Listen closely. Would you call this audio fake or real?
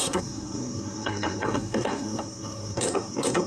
fake